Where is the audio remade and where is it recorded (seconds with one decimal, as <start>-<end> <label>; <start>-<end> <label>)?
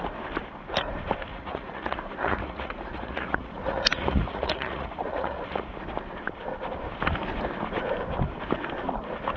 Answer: 0.0-1.3 recorded; 1.3-5.7 remade; 5.7-9.4 recorded